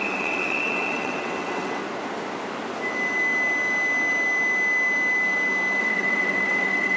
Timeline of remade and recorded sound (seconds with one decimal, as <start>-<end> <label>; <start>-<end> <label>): 0.0-1.8 remade; 1.8-5.8 recorded; 5.8-7.0 remade